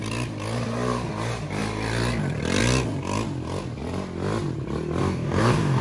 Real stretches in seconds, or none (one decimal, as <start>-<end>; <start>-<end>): 0.0-5.0